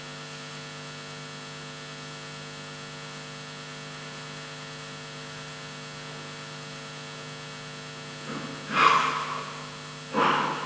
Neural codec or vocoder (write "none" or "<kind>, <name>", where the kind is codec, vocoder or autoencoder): none